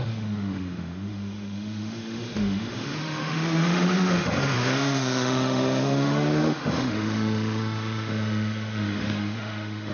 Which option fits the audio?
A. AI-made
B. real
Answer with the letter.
A